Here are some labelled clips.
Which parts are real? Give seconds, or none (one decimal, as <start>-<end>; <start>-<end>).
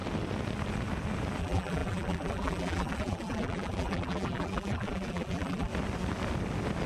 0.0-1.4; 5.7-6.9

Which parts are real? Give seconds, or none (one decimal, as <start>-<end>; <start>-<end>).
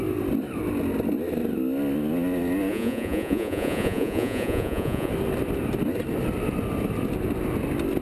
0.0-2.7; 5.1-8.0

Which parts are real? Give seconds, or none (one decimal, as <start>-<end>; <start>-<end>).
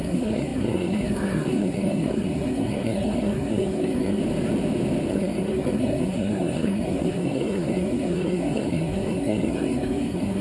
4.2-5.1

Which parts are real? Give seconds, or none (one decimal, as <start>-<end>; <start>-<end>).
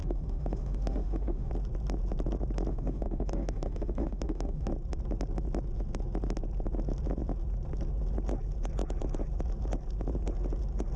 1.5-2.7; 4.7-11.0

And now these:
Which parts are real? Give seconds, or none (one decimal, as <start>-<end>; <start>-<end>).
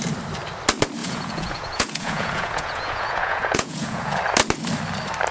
0.0-1.0; 4.2-5.3